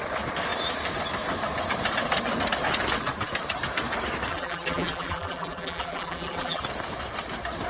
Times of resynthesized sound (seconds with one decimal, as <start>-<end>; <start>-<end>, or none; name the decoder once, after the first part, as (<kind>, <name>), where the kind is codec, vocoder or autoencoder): 4.3-6.6 (vocoder, BigVGAN v2)